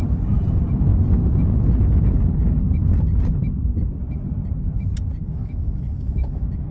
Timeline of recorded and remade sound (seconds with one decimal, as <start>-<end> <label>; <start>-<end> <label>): 0.0-5.2 recorded; 5.2-6.7 remade